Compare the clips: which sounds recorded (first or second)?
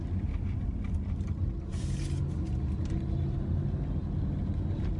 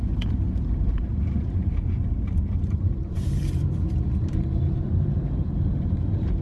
first